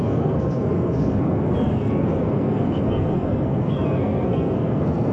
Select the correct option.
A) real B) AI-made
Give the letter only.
B